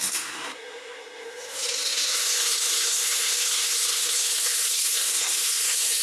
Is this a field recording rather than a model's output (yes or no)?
no